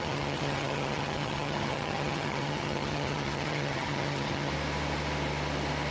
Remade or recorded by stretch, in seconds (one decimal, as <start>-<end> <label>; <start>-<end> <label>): 0.0-4.5 remade; 4.5-5.9 recorded